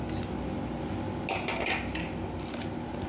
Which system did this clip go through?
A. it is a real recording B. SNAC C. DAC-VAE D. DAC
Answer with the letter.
A